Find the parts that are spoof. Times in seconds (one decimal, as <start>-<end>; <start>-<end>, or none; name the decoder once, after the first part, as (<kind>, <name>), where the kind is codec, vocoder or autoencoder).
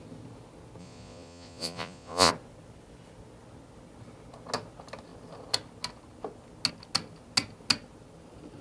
0.8-2.3 (vocoder, Vocos)